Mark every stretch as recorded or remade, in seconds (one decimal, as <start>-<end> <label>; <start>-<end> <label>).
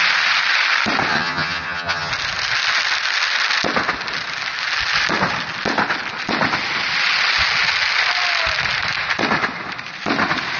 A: 0.0-1.1 recorded; 1.1-2.1 remade; 2.1-10.6 recorded